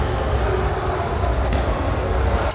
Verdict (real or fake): real